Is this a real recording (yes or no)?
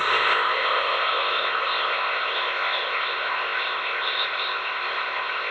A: no